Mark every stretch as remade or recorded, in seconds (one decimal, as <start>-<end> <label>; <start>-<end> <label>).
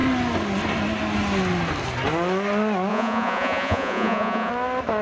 0.0-2.9 recorded; 2.9-4.5 remade; 4.5-5.0 recorded